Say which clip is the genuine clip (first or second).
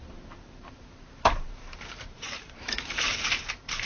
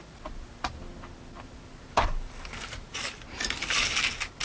second